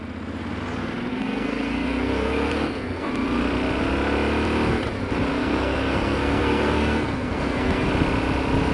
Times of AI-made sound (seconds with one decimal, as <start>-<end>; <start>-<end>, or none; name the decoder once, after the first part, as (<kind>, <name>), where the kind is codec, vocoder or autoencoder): 1.1-3.1 (codec, SNAC); 5.3-7.9